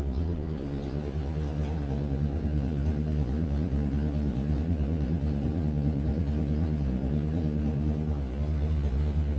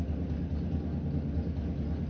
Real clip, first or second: second